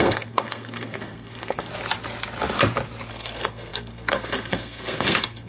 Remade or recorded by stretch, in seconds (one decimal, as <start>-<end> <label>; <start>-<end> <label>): 0.0-1.7 remade; 1.7-3.1 recorded; 3.1-5.5 remade